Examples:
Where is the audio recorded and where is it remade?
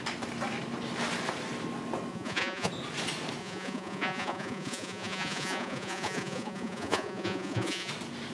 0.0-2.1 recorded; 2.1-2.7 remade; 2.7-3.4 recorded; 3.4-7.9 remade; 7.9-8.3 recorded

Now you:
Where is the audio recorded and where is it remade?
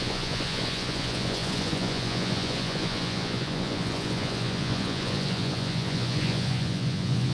0.0-7.3 remade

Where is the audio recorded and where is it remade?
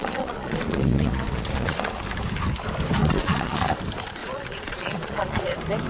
0.0-1.9 remade; 1.9-3.0 recorded; 3.0-3.8 remade; 3.8-4.2 recorded; 4.2-5.5 remade; 5.5-5.9 recorded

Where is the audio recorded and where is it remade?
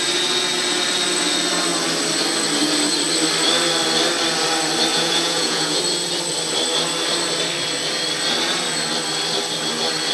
0.0-4.9 recorded; 4.9-5.8 remade; 5.8-10.1 recorded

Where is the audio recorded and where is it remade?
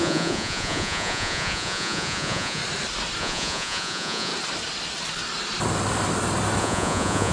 0.0-2.6 remade; 2.6-3.2 recorded; 3.2-4.3 remade; 4.3-6.6 recorded; 6.6-7.3 remade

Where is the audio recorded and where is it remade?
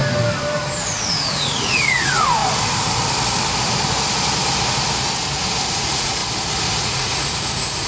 0.0-0.9 recorded; 0.9-2.4 remade; 2.4-5.7 recorded; 5.7-6.2 remade; 6.2-6.8 recorded; 6.8-7.9 remade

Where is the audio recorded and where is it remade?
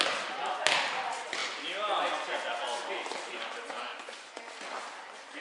0.0-3.9 recorded; 3.9-4.5 remade; 4.5-5.4 recorded